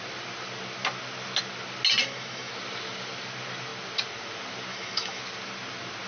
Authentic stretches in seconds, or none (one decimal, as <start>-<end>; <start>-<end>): 0.0-2.0; 2.5-4.7; 5.2-6.1